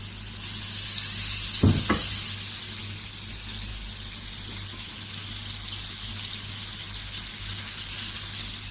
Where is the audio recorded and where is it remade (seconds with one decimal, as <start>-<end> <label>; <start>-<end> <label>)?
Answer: 0.0-8.7 recorded